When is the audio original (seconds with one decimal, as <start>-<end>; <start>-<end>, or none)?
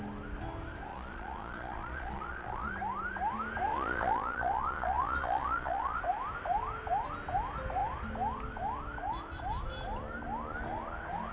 0.0-0.9; 2.7-3.7; 6.0-11.3